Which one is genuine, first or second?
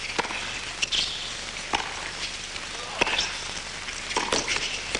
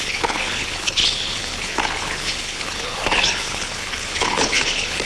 first